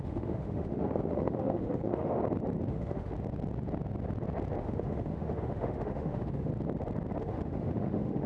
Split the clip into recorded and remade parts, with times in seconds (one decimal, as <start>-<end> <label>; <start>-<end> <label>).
0.0-2.2 remade; 2.2-2.7 recorded; 2.7-3.1 remade; 3.1-4.6 recorded; 4.6-6.5 remade; 6.5-7.2 recorded; 7.2-8.3 remade